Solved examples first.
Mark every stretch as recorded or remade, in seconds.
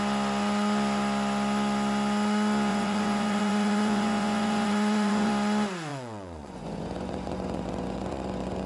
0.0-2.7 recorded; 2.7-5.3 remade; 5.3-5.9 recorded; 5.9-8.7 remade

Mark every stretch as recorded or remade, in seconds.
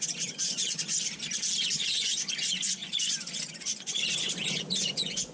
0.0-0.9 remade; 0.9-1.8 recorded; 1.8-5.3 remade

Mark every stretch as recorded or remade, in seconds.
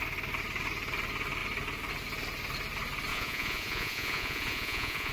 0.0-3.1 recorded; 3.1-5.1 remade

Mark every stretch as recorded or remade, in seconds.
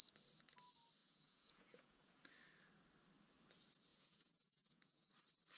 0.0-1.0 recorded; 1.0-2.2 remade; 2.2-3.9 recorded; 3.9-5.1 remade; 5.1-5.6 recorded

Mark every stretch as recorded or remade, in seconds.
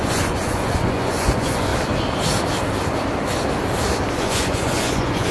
0.0-1.7 remade; 1.7-4.1 recorded; 4.1-5.3 remade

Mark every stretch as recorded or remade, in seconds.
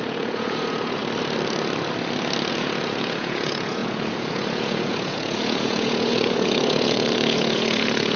0.0-1.0 remade; 1.0-2.5 recorded; 2.5-8.2 remade